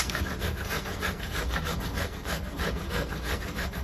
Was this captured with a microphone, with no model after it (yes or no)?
no